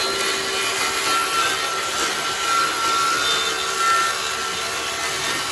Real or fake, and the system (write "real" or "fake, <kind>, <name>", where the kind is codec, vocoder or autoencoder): real